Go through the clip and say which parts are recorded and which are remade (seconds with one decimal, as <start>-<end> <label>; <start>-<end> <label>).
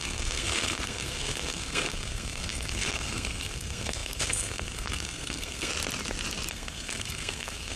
0.0-5.7 remade; 5.7-6.5 recorded; 6.5-7.8 remade